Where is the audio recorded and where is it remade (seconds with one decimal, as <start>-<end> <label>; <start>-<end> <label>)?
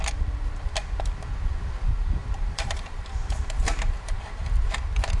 0.0-2.2 recorded; 2.2-4.2 remade; 4.2-5.2 recorded